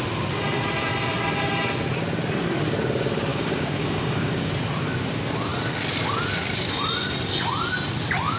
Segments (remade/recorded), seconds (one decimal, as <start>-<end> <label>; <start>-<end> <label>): 0.0-3.3 recorded; 3.3-4.5 remade; 4.5-8.4 recorded